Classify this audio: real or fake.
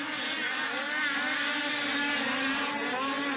real